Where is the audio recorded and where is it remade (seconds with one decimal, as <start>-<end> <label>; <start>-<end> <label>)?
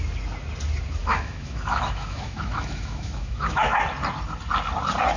0.0-1.0 recorded; 1.0-3.7 remade; 3.7-5.2 recorded